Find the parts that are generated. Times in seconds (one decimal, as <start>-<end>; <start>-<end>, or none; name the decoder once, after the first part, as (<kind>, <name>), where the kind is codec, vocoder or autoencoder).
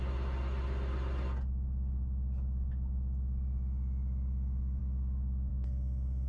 none